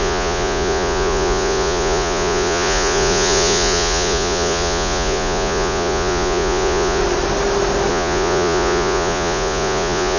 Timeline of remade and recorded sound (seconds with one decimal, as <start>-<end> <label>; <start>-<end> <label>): 0.0-7.0 remade; 7.0-7.9 recorded; 7.9-10.2 remade